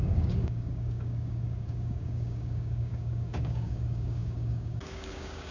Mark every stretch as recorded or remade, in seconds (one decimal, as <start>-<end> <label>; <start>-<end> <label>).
0.0-5.5 remade